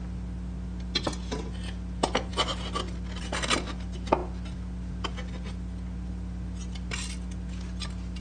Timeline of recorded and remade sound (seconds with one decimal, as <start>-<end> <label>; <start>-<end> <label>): 0.0-8.2 recorded